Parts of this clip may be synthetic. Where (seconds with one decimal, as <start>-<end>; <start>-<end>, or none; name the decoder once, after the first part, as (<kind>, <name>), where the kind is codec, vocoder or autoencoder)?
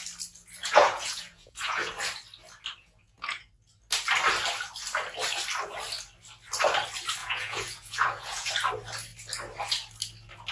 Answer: 0.6-1.9 (vocoder, Vocos); 2.8-3.5; 7.2-8.5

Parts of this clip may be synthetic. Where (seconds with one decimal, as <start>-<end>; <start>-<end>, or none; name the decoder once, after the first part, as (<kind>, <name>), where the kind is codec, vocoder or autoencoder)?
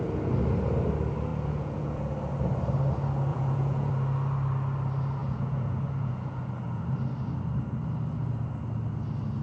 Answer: 1.3-2.1 (vocoder, Vocos); 3.3-3.9; 5.2-6.8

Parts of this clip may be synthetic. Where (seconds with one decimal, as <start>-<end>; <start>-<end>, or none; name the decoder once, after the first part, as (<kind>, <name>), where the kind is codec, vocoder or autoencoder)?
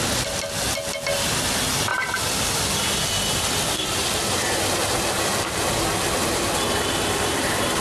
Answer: 1.9-5.9 (vocoder, BigVGAN v2)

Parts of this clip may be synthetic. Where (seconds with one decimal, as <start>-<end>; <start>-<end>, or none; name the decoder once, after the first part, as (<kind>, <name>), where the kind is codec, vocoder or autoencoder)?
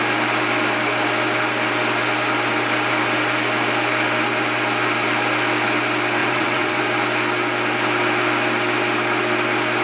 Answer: 6.2-6.8 (vocoder, WaveNeXt)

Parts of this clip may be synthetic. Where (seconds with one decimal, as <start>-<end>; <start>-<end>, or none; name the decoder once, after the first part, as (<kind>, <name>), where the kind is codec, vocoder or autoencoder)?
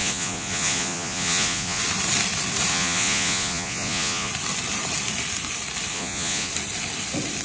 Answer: 0.0-1.8 (vocoder, Vocos); 2.7-4.3; 5.9-6.5